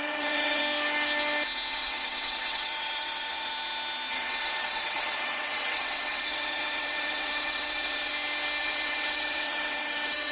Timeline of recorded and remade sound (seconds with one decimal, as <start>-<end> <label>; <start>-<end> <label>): 0.0-0.6 remade; 0.6-1.7 recorded; 1.7-3.5 remade; 3.5-4.1 recorded; 4.1-8.1 remade; 8.1-8.6 recorded; 8.6-10.3 remade

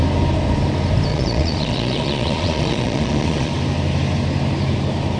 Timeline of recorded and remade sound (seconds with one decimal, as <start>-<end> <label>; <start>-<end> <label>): 0.0-1.1 recorded; 1.1-3.5 remade; 3.5-5.2 recorded